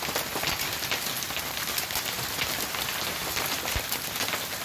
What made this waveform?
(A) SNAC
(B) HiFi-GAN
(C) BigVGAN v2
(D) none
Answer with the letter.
D